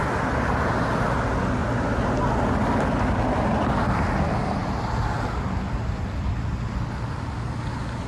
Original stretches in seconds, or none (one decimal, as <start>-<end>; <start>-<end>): 0.0-1.6; 2.2-8.1